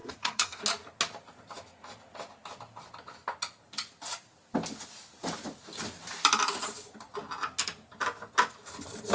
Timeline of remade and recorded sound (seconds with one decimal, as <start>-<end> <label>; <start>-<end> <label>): 0.0-0.6 remade; 0.6-9.1 recorded